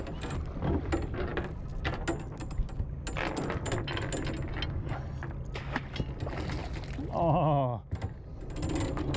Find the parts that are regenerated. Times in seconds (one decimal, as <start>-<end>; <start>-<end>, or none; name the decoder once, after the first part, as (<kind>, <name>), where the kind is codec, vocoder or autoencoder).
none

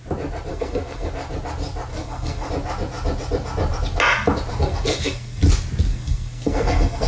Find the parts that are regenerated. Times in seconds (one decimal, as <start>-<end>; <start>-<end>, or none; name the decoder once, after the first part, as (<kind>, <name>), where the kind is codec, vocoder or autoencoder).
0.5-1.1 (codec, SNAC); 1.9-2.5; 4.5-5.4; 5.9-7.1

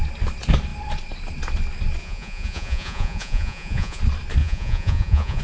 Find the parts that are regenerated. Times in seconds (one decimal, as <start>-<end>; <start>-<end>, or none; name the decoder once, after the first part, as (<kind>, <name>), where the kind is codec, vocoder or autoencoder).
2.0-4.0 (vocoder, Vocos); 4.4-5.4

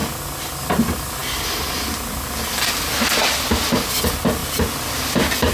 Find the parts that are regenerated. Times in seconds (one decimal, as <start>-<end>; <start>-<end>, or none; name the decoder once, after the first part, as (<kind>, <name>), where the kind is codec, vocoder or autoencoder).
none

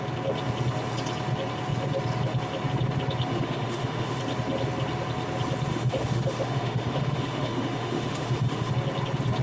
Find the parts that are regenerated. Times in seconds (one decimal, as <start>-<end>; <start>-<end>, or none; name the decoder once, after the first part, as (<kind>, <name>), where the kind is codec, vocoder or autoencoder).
3.3-4.2 (autoencoder, DAC-VAE); 5.7-8.7

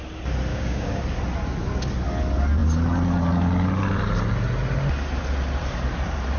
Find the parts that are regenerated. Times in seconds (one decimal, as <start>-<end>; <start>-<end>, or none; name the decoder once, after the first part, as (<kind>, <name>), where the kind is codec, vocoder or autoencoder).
0.5-1.0 (codec, DAC)